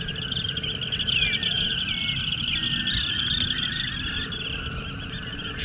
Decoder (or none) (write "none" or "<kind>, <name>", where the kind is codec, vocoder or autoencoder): none